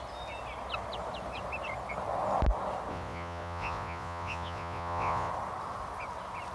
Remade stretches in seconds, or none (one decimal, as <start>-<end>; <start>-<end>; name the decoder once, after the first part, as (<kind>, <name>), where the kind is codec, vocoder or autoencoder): 2.9-5.3 (vocoder, Vocos)